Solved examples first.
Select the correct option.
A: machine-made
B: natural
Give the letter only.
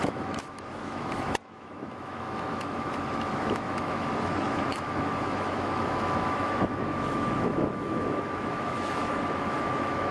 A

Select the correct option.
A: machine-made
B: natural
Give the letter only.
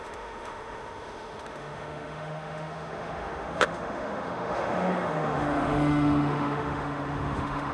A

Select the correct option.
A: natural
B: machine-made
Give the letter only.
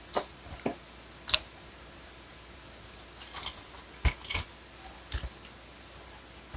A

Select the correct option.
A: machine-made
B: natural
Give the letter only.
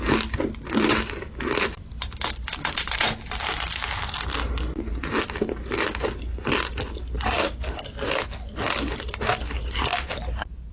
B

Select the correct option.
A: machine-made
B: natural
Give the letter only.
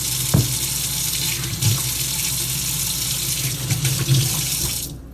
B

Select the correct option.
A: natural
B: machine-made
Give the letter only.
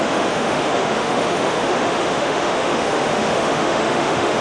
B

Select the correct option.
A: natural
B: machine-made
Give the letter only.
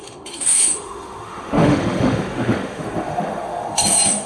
B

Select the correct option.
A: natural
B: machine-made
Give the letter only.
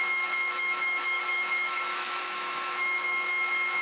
B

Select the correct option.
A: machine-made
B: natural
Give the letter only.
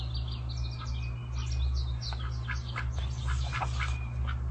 B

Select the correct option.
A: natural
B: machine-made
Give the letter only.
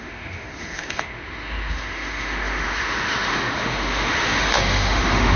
B